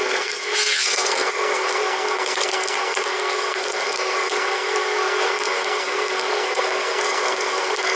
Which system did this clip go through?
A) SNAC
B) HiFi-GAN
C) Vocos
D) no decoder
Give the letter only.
A